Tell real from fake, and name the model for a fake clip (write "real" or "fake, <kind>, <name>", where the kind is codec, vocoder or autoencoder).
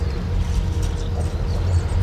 real